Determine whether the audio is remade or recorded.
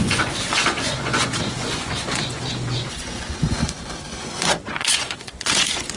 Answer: remade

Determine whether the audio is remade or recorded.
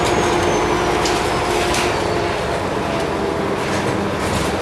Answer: recorded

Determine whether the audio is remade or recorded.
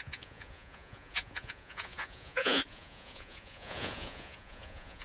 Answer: remade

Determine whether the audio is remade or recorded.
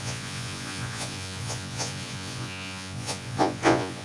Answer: remade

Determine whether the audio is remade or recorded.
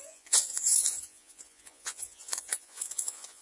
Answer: remade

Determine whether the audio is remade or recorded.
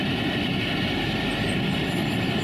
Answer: recorded